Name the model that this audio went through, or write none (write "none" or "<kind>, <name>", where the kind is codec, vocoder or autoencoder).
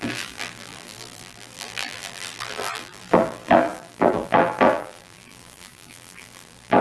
vocoder, BigVGAN v2